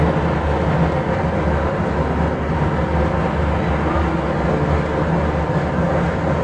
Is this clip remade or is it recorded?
recorded